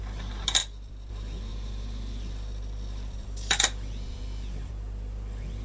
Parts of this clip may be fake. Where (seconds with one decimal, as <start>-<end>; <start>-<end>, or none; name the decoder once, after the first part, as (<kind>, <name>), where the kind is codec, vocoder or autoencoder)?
0.6-1.1 (vocoder, BigVGAN v2); 1.5-4.7